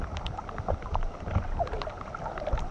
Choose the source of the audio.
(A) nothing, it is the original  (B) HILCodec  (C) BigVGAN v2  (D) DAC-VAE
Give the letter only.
A